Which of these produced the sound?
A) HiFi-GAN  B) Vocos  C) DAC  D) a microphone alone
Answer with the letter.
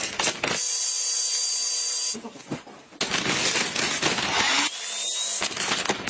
D